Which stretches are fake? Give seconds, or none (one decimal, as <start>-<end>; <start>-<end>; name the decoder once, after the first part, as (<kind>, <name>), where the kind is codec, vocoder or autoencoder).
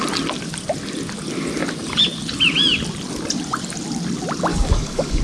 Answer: 4.5-5.2 (codec, DAC)